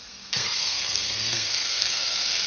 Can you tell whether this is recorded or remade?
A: remade